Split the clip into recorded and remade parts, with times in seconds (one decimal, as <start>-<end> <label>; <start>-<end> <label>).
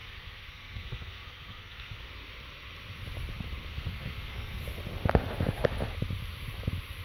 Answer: 0.0-2.1 remade; 2.1-3.7 recorded; 3.7-4.6 remade; 4.6-7.0 recorded